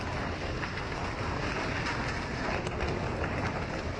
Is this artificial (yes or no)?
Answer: no